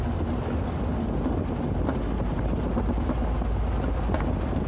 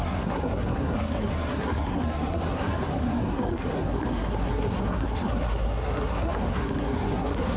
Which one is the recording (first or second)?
first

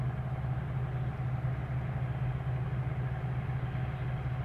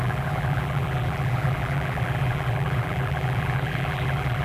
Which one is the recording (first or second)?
first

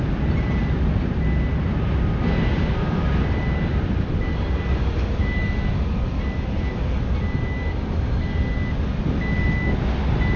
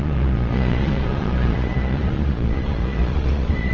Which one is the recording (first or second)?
first